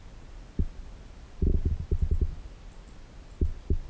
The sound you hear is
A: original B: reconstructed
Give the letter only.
A